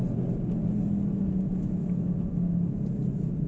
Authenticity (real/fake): real